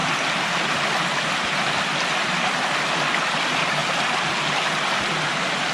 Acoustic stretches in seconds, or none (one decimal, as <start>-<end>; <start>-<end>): 0.0-3.4; 3.8-5.0